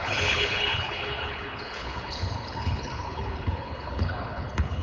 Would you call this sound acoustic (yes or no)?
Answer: no